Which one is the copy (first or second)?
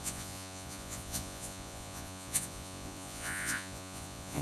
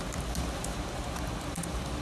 first